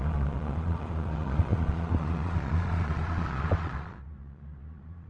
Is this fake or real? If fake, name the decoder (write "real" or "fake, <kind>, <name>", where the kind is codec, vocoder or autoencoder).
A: fake, vocoder, Vocos